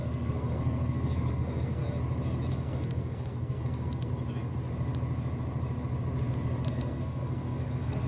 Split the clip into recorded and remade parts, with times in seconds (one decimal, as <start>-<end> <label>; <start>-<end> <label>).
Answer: 0.0-1.8 remade; 1.8-2.5 recorded; 2.5-4.1 remade; 4.1-6.7 recorded; 6.7-8.1 remade

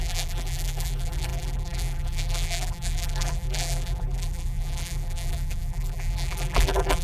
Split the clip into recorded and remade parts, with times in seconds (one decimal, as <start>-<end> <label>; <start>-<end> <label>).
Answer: 0.0-7.0 remade

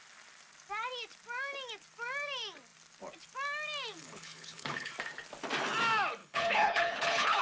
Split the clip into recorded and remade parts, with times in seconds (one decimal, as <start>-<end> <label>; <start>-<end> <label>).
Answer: 0.0-4.0 recorded; 4.0-4.9 remade; 4.9-6.2 recorded; 6.2-7.4 remade

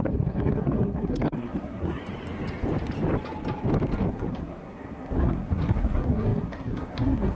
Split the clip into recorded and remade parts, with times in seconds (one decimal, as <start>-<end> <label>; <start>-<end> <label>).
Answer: 0.0-2.0 remade; 2.0-4.1 recorded; 4.1-7.3 remade

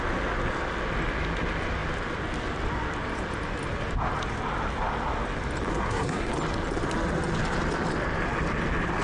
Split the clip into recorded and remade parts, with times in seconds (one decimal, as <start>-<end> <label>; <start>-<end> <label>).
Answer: 0.0-5.7 recorded; 5.7-6.3 remade; 6.3-9.0 recorded

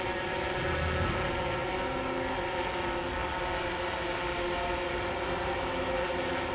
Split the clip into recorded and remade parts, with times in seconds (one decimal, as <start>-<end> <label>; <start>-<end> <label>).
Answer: 0.0-6.5 recorded